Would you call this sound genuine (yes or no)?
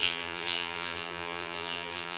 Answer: no